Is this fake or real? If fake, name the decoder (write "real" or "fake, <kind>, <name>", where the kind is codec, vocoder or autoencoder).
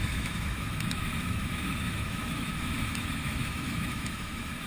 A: fake, autoencoder, DAC-VAE